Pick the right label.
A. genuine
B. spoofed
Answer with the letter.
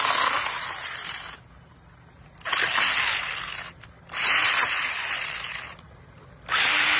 A